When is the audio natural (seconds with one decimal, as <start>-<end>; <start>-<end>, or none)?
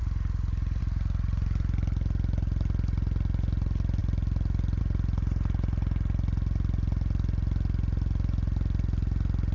0.0-9.5